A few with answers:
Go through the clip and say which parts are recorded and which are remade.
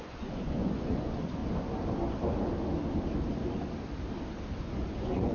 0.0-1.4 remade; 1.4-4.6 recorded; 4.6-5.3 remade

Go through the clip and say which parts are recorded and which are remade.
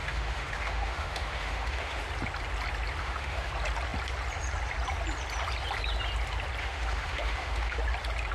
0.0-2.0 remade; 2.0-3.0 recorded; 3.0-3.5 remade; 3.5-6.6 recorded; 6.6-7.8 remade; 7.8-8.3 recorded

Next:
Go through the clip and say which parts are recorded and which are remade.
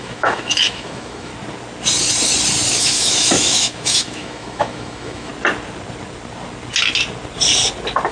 0.0-1.3 remade; 1.3-2.7 recorded; 2.7-5.3 remade; 5.3-8.1 recorded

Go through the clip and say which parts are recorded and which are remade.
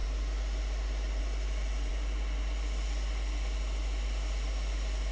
0.0-5.1 recorded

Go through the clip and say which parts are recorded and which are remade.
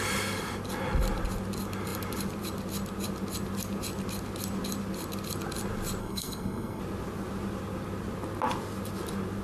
0.0-6.0 recorded; 6.0-6.8 remade; 6.8-9.4 recorded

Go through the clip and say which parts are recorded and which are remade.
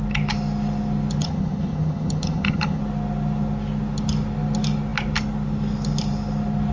0.0-1.2 recorded; 1.2-2.8 remade; 2.8-6.7 recorded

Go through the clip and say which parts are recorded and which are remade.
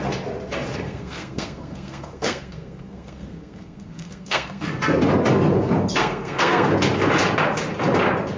0.0-0.7 recorded; 0.7-4.7 remade; 4.7-6.0 recorded; 6.0-6.7 remade; 6.7-8.4 recorded